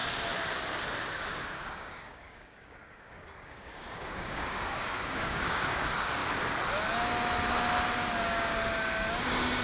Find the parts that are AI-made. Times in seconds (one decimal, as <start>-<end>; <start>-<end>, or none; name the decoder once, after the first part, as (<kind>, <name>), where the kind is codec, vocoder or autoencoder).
1.1-6.2 (codec, DAC); 8.2-9.6

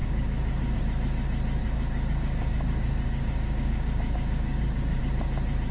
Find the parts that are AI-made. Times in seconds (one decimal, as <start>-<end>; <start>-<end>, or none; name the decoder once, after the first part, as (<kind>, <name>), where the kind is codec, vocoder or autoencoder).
0.0-0.8 (codec, DAC); 1.6-5.0

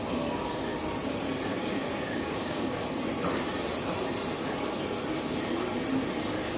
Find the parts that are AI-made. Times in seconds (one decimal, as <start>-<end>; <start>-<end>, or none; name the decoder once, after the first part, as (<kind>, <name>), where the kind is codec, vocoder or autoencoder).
1.5-2.8 (codec, DAC)

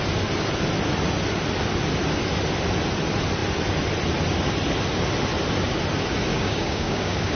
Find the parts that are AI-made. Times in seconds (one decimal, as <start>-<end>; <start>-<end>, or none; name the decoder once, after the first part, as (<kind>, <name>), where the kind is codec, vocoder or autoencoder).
6.3-7.3 (codec, DAC)

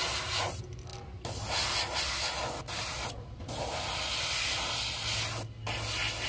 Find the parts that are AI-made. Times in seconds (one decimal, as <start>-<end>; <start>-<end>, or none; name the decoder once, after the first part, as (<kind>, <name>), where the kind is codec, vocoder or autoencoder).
none

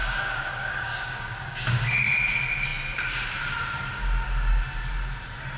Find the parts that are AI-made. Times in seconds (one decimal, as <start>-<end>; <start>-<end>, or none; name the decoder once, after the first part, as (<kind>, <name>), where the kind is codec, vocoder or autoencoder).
0.0-2.1 (codec, DAC)